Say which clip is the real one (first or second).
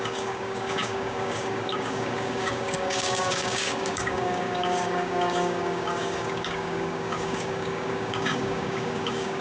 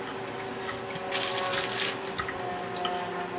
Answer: second